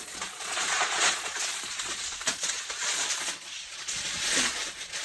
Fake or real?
fake